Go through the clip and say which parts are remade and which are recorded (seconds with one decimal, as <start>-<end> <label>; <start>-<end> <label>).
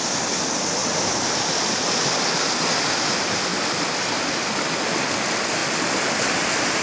0.0-6.8 recorded